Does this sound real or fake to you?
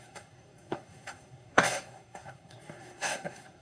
fake